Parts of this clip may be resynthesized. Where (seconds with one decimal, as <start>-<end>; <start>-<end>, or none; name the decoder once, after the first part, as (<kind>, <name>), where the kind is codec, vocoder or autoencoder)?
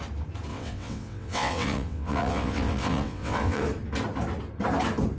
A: 0.5-3.6 (vocoder, WaveNeXt)